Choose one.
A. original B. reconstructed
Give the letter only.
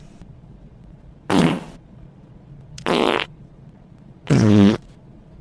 B